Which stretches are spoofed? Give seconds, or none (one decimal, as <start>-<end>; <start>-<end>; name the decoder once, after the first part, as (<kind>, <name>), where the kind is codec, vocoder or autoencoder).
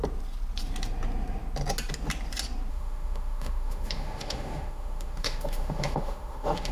2.7-6.7 (autoencoder, DAC-VAE)